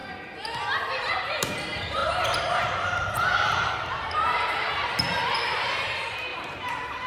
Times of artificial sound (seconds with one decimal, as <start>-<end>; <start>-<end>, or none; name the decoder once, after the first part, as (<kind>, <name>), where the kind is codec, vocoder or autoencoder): 1.0-7.1 (vocoder, BigVGAN v2)